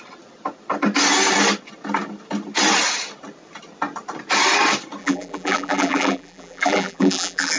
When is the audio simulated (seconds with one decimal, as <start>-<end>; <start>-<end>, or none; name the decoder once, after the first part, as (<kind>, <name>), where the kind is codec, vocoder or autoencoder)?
5.0-7.6 (vocoder, BigVGAN v2)